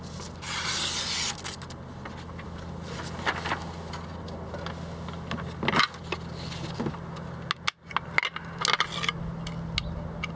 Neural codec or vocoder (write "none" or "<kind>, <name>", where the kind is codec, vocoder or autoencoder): none